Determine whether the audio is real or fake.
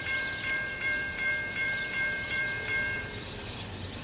fake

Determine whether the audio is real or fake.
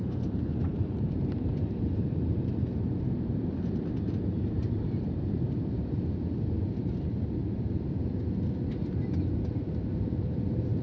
fake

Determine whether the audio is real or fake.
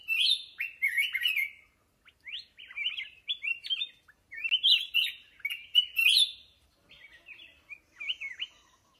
real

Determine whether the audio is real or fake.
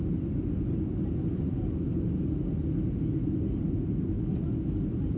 real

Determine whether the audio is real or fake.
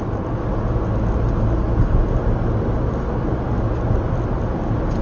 real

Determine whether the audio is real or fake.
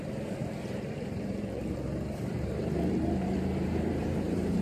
fake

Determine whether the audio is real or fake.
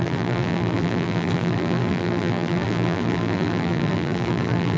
fake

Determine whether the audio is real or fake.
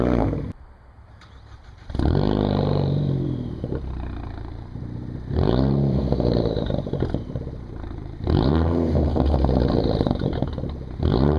fake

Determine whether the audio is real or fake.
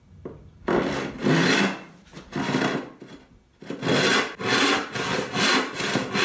real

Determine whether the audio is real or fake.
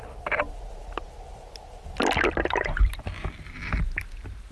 real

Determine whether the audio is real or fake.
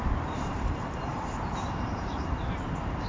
fake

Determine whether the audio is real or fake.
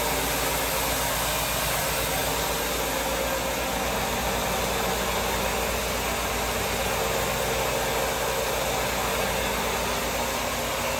real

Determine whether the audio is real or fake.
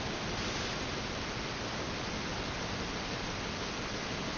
real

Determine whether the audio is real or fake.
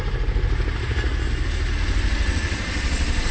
real